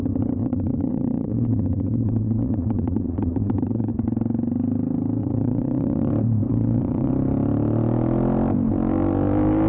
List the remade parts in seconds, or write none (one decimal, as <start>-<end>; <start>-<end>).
0.4-3.9; 5.2-6.1; 6.5-7.1